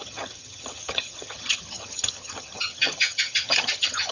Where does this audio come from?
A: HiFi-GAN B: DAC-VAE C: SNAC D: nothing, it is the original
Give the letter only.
A